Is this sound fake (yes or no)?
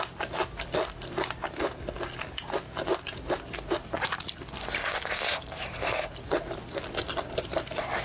no